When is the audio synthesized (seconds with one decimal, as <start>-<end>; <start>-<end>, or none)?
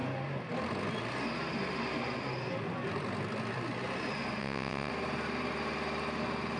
4.4-4.9